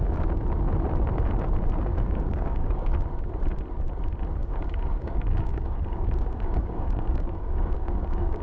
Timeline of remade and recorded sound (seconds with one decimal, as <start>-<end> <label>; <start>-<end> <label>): 0.0-1.9 recorded; 1.9-2.9 remade; 2.9-4.4 recorded; 4.4-8.4 remade